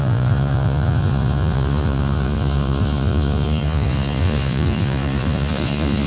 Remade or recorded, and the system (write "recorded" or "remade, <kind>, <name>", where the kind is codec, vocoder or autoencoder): remade, vocoder, Vocos